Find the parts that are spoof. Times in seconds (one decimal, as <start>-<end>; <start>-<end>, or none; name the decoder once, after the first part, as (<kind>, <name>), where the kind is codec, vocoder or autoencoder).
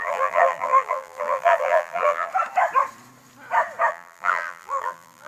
0.0-2.3 (vocoder, BigVGAN v2); 3.9-5.3